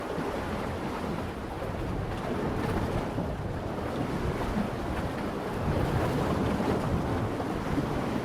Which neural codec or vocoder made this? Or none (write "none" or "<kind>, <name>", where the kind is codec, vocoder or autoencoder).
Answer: none